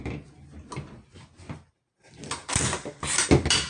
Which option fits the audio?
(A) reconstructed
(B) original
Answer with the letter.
B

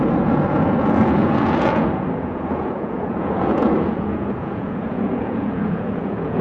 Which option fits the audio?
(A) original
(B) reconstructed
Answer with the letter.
B